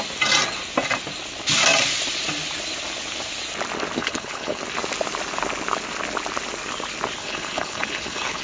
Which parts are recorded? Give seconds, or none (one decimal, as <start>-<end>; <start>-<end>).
0.0-4.0; 4.6-7.2

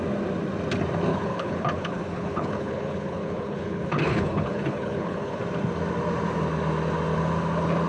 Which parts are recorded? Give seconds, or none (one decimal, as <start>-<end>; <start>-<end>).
0.0-1.1; 5.4-7.9

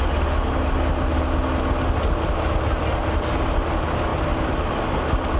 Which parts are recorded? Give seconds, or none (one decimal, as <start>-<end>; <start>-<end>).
0.0-5.4

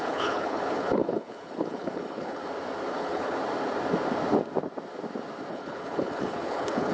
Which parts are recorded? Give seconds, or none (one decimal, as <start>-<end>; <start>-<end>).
2.4-2.9; 3.4-5.5